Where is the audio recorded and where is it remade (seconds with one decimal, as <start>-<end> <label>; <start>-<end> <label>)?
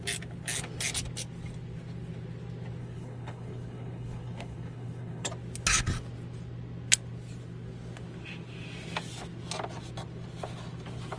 0.0-2.8 recorded; 2.8-5.3 remade; 5.3-11.2 recorded